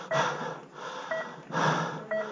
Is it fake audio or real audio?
real